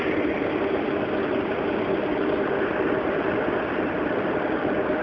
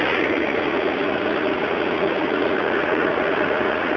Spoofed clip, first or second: second